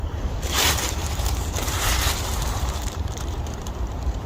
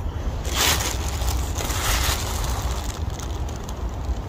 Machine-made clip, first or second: first